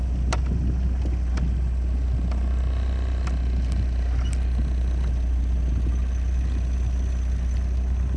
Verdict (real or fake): real